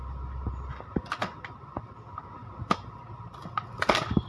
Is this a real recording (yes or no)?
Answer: yes